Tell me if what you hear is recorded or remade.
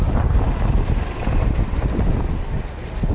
recorded